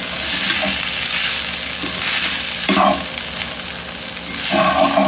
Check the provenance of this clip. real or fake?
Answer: real